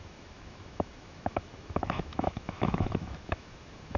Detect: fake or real fake